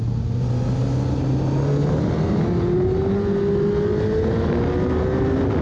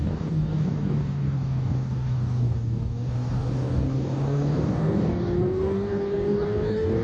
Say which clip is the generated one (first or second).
second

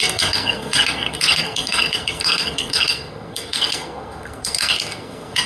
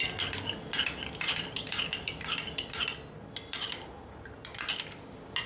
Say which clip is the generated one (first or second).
first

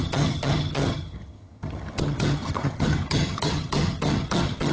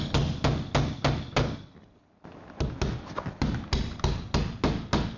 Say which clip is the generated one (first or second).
first